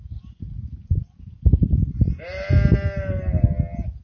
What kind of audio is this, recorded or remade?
recorded